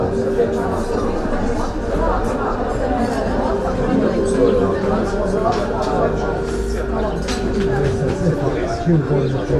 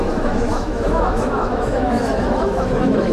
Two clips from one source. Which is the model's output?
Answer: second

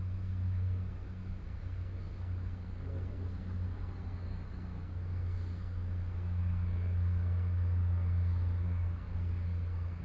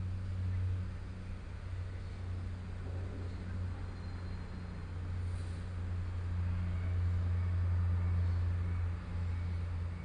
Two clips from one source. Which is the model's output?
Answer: first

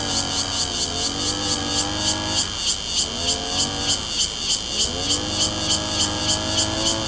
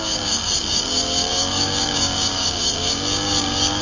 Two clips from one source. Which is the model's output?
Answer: second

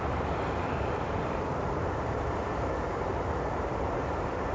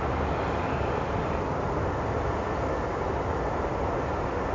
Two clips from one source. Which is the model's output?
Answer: first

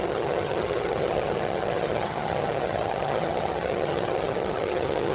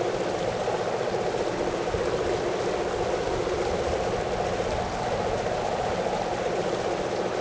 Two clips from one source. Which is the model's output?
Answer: first